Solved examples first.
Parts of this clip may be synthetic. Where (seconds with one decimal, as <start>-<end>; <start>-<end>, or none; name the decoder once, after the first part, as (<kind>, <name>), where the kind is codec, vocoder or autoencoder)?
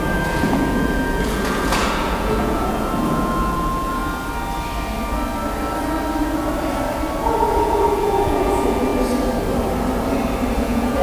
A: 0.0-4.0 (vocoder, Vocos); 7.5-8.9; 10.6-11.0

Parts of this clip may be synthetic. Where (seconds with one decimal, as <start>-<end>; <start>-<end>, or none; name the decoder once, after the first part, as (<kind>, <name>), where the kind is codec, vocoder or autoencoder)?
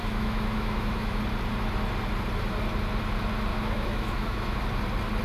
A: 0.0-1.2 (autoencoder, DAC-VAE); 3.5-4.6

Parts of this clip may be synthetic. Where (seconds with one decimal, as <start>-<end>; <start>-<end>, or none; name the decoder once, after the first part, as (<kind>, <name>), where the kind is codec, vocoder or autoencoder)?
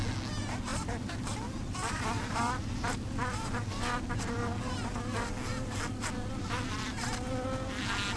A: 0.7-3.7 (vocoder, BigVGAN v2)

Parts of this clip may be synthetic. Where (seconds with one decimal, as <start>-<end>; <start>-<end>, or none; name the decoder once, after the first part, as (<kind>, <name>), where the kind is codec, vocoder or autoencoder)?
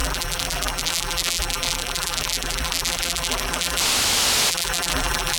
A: 0.0-3.8 (vocoder, BigVGAN v2); 4.5-5.4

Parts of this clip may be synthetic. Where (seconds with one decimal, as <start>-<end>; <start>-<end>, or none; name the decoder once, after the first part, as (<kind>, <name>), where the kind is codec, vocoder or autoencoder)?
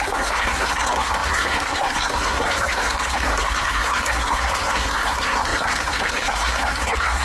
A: 0.0-7.2 (codec, SNAC)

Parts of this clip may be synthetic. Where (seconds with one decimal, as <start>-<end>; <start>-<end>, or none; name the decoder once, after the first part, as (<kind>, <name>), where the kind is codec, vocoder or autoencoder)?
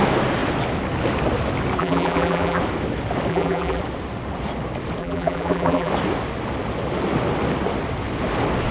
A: 1.8-2.6 (vocoder, BigVGAN v2); 3.3-3.8; 5.0-5.9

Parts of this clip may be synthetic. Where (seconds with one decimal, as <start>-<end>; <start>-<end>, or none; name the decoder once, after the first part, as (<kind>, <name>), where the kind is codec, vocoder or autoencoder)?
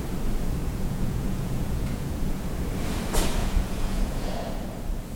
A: 0.6-2.4 (vocoder, Vocos); 3.4-4.5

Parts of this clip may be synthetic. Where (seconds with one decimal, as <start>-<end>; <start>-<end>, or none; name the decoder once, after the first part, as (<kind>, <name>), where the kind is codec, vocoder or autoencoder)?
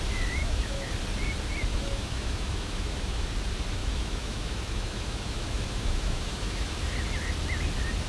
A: 0.4-0.9 (autoencoder, DAC-VAE); 1.7-3.2; 3.8-6.8